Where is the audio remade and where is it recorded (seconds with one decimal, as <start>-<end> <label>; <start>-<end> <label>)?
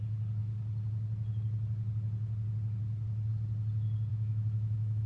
0.0-4.1 recorded; 4.1-5.1 remade